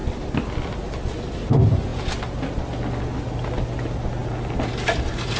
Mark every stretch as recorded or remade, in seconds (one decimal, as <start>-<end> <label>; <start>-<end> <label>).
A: 0.0-5.4 recorded

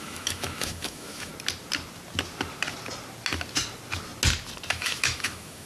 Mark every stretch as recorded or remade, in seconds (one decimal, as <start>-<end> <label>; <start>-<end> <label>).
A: 0.0-1.3 remade; 1.3-4.7 recorded; 4.7-5.7 remade